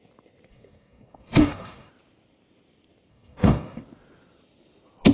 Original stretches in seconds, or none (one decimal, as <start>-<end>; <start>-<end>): 0.0-0.5; 1.9-3.1; 3.8-5.1